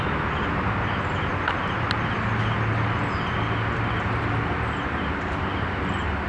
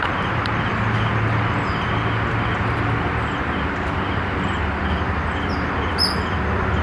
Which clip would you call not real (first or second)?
second